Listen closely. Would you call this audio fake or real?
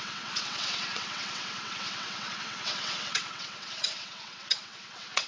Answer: fake